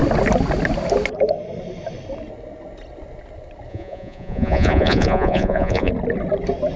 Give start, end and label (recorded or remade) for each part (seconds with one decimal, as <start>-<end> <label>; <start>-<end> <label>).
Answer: 0.0-3.7 recorded; 3.7-5.9 remade; 5.9-6.8 recorded